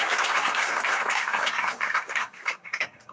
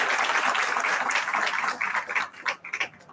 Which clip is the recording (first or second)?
second